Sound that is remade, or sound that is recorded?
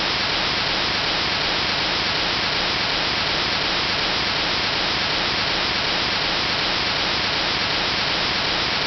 remade